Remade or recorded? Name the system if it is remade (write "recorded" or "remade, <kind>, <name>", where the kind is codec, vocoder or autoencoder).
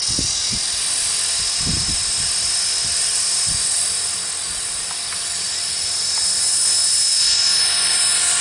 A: recorded